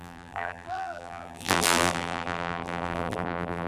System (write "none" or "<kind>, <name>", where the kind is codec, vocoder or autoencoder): vocoder, BigVGAN v2